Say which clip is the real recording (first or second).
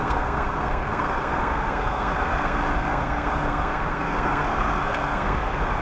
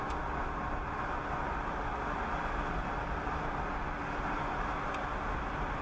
second